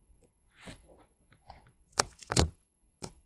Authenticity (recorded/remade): remade